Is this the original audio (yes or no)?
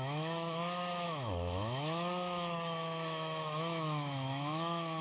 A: no